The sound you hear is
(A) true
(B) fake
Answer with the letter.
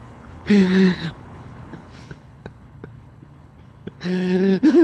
B